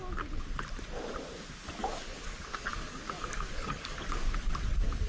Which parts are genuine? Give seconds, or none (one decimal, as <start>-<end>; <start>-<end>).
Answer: 0.0-1.8; 4.3-5.1

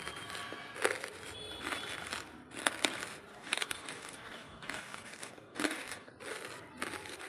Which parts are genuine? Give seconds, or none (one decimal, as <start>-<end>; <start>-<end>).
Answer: 0.0-3.3; 6.1-7.3